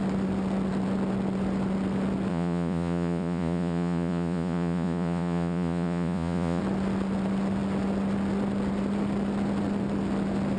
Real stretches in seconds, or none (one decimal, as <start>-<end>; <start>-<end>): 0.0-2.3; 6.6-10.6